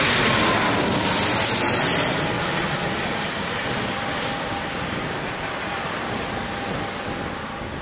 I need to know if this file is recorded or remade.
recorded